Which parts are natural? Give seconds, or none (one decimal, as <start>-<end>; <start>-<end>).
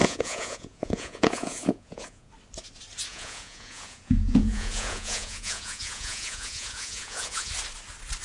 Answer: 2.3-3.1; 7.5-8.2